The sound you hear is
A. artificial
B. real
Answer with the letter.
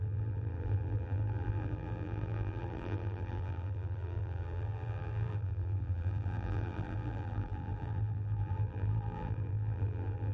A